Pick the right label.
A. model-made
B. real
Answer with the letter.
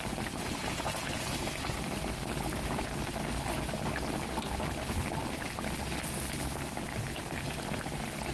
B